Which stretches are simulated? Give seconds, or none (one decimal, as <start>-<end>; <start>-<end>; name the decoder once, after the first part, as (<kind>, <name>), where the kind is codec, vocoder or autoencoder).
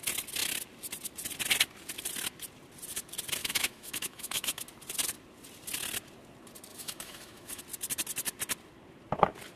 3.4-4.6 (autoencoder, DAC-VAE); 6.7-7.6